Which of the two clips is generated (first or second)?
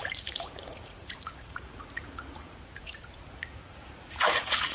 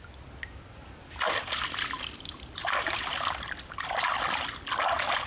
first